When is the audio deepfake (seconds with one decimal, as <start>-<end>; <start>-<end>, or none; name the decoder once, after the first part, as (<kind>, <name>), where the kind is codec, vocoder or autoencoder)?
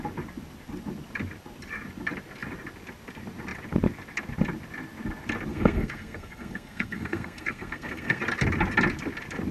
5.5-8.2 (codec, SNAC)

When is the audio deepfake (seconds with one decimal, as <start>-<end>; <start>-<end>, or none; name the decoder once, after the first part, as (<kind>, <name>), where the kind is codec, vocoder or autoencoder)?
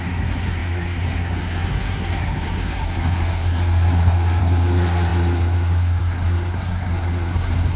0.0-7.8 (codec, SNAC)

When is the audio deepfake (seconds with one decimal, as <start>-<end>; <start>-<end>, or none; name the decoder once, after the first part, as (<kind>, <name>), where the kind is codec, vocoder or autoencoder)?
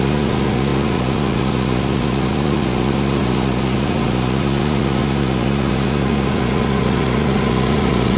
0.0-8.2 (vocoder, Vocos)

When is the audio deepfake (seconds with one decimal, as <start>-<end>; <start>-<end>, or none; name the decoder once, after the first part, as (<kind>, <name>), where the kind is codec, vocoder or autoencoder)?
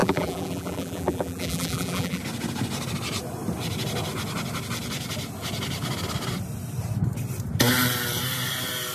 0.0-2.2 (vocoder, BigVGAN v2)